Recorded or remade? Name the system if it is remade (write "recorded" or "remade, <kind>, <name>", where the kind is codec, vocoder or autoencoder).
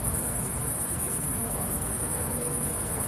remade, codec, SNAC